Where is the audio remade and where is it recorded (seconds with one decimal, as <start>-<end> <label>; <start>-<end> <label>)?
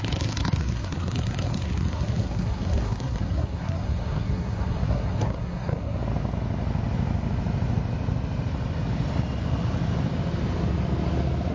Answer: 0.0-6.0 remade; 6.0-11.5 recorded